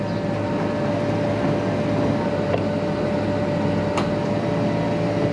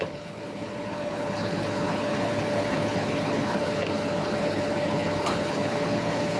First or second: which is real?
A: first